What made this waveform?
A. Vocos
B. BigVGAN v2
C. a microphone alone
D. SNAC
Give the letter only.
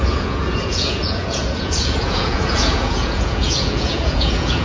A